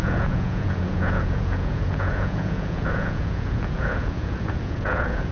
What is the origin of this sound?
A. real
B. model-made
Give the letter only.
B